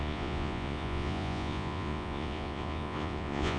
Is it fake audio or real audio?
fake